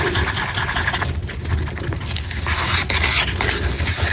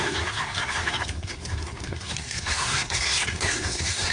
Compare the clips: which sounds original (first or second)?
first